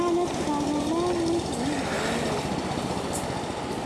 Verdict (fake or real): real